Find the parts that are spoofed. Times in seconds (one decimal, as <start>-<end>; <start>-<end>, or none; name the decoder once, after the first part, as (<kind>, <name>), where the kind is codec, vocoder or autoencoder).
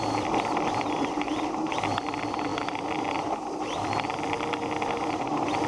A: 0.0-5.7 (vocoder, BigVGAN v2)